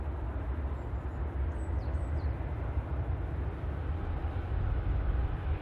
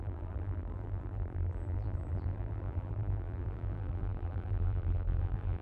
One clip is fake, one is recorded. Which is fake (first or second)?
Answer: second